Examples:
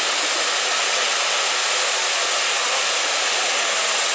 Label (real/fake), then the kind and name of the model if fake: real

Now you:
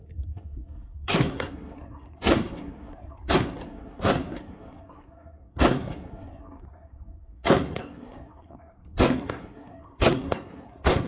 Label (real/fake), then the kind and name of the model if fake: fake, codec, SNAC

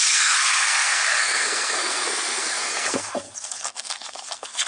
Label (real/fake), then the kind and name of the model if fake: fake, codec, SNAC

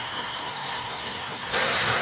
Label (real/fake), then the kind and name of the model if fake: fake, codec, SNAC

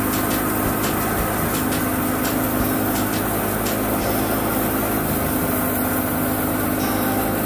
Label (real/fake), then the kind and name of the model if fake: real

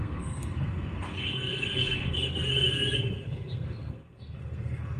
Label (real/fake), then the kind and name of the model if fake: fake, codec, SNAC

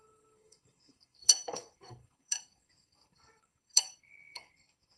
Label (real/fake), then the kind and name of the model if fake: fake, codec, SNAC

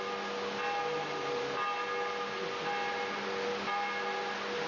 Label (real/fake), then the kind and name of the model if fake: real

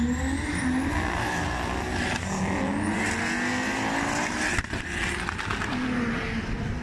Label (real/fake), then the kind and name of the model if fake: real